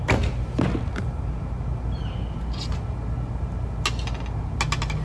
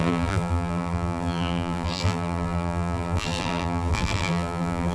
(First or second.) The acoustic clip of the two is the first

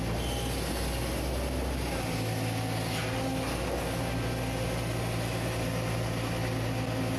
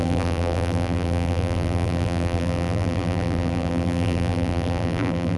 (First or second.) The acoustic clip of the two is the first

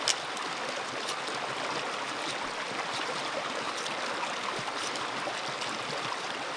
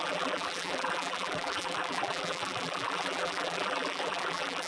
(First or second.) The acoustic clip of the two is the first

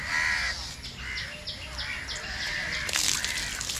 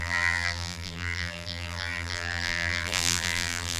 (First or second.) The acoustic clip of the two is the first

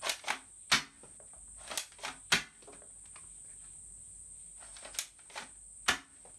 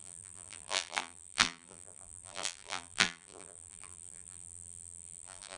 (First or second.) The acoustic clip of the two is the first